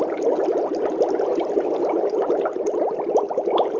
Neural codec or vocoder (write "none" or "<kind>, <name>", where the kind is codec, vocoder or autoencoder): none